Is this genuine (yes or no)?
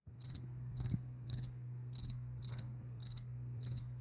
no